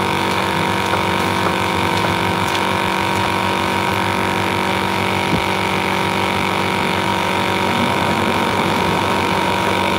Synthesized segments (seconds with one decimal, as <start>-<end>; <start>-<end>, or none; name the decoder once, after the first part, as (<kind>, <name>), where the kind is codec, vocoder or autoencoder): 0.0-3.9 (autoencoder, DAC-VAE); 4.7-10.0